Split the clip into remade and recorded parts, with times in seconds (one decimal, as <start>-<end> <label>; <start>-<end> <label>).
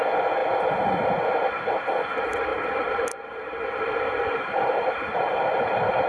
0.0-2.5 recorded; 2.5-6.1 remade